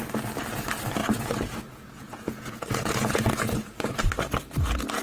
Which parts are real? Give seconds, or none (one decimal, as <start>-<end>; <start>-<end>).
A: 0.0-1.0; 4.0-5.0